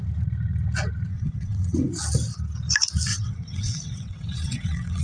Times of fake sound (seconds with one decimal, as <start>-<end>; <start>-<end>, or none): 1.1-1.9; 3.1-5.0